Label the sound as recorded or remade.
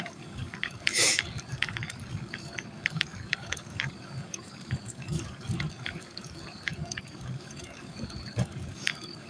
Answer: remade